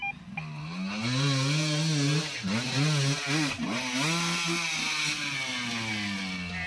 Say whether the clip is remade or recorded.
recorded